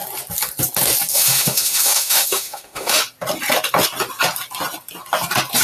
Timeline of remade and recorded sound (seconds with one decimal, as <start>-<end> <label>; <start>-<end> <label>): 0.0-1.1 recorded; 1.1-3.0 remade; 3.0-5.6 recorded